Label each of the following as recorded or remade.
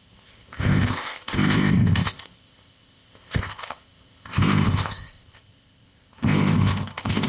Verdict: remade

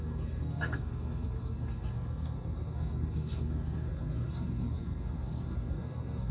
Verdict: remade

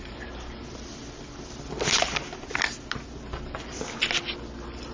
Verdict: recorded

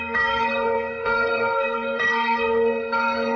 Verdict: remade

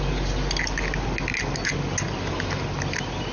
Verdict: recorded